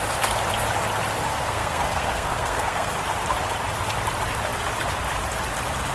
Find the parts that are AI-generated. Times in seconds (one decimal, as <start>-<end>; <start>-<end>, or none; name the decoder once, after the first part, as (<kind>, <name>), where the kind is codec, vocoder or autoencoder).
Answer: 1.3-2.9 (codec, SNAC)